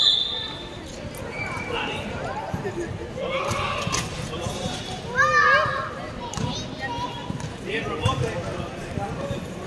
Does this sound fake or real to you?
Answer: real